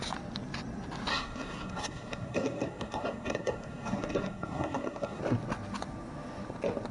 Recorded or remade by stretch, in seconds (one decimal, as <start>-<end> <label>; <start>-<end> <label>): 0.0-1.1 recorded; 1.1-5.2 remade; 5.2-6.9 recorded

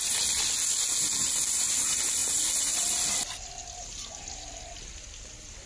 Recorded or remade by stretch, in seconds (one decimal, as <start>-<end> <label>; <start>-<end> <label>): 0.0-5.7 recorded

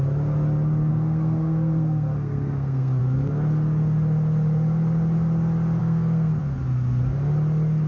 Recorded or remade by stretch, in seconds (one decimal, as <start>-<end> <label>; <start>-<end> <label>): 0.0-0.9 recorded; 0.9-3.0 remade; 3.0-5.8 recorded; 5.8-6.4 remade; 6.4-7.9 recorded

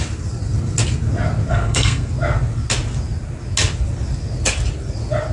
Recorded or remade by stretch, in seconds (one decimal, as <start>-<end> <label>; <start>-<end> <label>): 0.0-1.5 recorded; 1.5-2.1 remade; 2.1-5.3 recorded

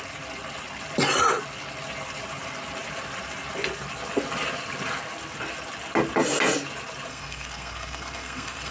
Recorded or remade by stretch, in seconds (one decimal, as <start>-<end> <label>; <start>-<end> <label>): 0.0-7.1 recorded; 7.1-8.7 remade

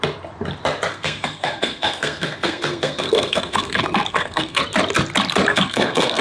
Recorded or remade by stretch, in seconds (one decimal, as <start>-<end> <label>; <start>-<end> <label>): 0.0-0.9 recorded; 0.9-4.6 remade; 4.6-5.5 recorded; 5.5-6.2 remade

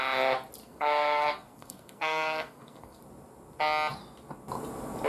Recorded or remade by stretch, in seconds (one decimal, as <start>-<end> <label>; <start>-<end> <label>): 0.0-0.6 recorded; 0.6-3.0 remade; 3.0-5.1 recorded